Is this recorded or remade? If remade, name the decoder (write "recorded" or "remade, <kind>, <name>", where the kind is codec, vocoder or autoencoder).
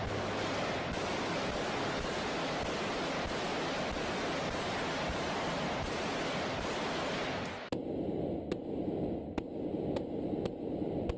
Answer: recorded